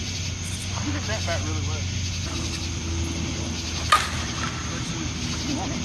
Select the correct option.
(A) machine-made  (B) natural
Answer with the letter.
B